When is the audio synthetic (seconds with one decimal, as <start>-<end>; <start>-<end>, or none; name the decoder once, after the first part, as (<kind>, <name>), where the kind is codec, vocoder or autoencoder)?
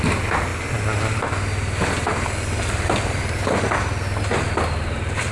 0.0-0.5 (vocoder, BigVGAN v2); 2.6-5.3